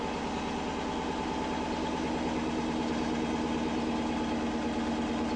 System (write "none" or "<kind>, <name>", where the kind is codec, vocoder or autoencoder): none